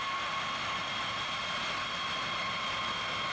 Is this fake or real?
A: real